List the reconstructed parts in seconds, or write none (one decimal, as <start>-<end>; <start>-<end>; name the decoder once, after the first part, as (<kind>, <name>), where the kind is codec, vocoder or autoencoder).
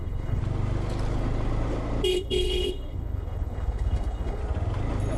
0.0-0.4 (codec, HILCodec); 2.1-4.4